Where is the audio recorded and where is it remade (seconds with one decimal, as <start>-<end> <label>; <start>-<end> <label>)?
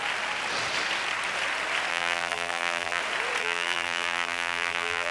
0.0-1.9 recorded; 1.9-3.0 remade; 3.0-3.4 recorded; 3.4-5.1 remade